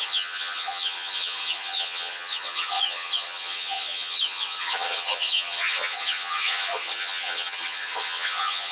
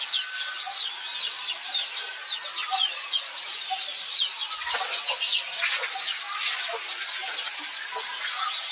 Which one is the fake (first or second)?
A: first